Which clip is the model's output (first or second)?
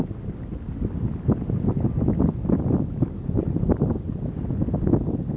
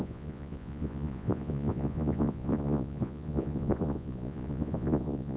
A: second